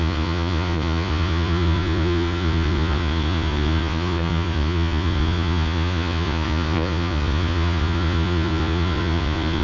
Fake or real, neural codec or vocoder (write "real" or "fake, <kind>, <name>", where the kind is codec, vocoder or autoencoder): fake, vocoder, Vocos